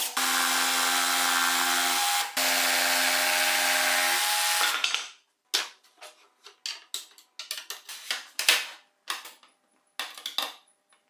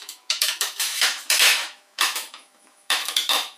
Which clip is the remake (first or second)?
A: second